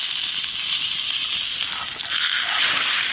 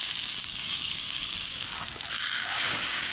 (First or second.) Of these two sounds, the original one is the first